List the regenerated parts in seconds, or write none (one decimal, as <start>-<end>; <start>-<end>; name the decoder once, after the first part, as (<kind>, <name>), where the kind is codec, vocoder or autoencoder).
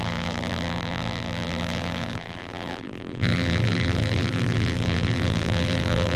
0.0-6.2 (vocoder, BigVGAN v2)